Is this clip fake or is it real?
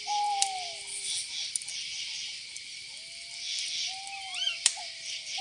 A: real